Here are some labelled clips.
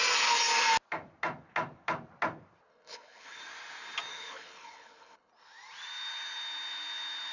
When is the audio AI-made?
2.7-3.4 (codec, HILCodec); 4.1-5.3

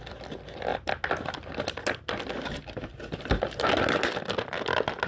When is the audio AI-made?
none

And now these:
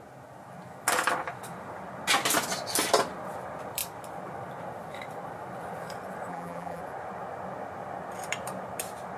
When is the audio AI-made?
6.3-6.8 (vocoder, BigVGAN v2)

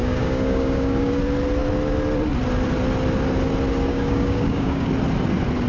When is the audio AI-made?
0.0-1.2 (codec, DAC); 3.9-4.9